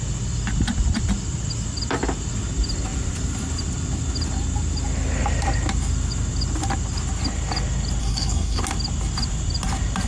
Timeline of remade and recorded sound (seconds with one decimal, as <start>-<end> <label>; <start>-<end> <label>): 0.0-8.0 recorded; 8.0-8.6 remade; 8.6-10.1 recorded